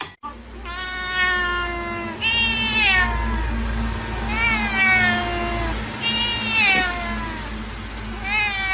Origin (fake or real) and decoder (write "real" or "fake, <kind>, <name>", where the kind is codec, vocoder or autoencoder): real